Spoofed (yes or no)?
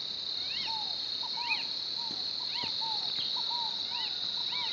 no